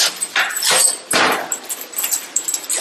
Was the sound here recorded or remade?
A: recorded